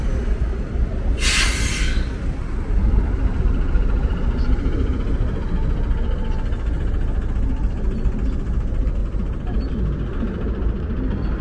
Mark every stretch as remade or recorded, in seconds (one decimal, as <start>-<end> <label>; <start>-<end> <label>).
0.0-9.0 recorded; 9.0-9.7 remade; 9.7-11.4 recorded